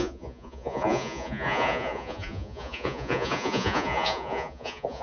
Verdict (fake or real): fake